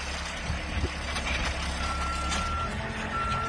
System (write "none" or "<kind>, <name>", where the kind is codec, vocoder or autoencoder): none